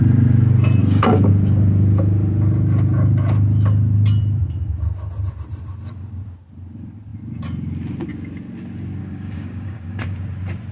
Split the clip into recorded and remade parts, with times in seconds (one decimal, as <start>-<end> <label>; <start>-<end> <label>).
0.0-0.8 recorded; 0.8-1.3 remade; 1.3-9.0 recorded; 9.0-10.0 remade; 10.0-10.7 recorded